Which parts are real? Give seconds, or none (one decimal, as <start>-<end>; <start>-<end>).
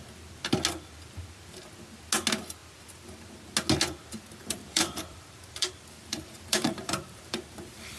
0.0-4.4